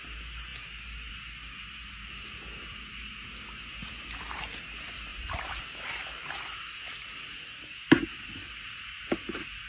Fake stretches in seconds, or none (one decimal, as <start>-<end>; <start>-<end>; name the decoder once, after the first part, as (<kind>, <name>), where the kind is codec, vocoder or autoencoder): none